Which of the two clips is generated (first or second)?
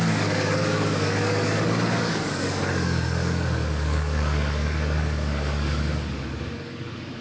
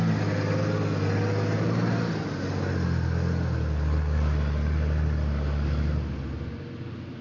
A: first